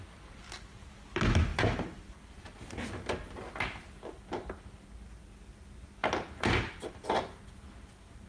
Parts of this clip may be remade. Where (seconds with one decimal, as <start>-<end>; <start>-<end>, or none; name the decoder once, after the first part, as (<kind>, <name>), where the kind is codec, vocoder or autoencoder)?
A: none